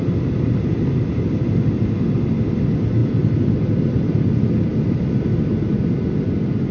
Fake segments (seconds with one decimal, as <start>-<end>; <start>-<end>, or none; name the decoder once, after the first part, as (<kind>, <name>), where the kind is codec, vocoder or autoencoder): none